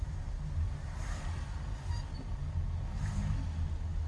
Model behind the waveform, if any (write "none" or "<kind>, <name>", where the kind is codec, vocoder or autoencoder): none